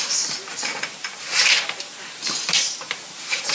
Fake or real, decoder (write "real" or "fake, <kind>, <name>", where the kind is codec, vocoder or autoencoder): fake, vocoder, BigVGAN v2